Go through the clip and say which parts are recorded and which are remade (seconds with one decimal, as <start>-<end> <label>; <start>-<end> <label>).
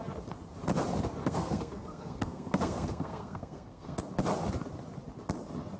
0.0-1.2 recorded; 1.2-4.1 remade; 4.1-5.8 recorded